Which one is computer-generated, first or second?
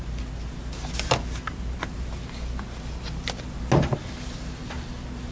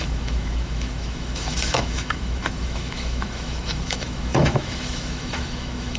second